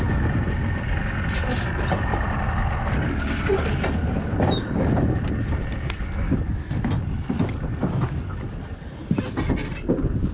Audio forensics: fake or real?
real